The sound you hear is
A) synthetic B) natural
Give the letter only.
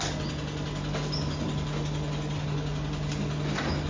B